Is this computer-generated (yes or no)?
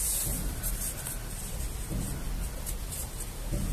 no